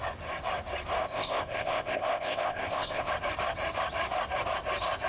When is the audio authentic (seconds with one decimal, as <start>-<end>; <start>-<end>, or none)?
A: 0.0-1.0; 3.1-5.1